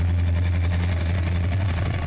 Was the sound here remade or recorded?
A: remade